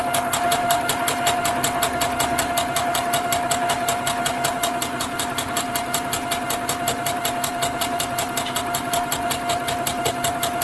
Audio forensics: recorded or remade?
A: recorded